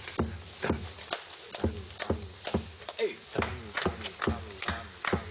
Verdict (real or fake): real